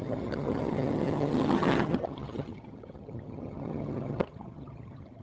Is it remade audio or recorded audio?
remade